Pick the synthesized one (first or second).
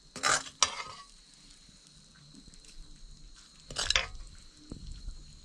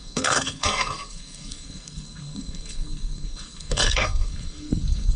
second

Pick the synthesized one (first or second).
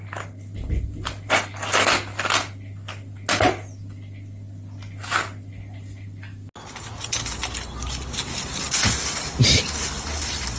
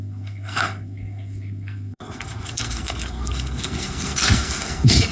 second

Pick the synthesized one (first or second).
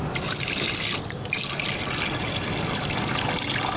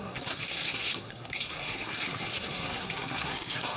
second